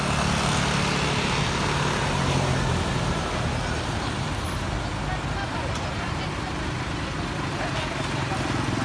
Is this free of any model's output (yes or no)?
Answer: yes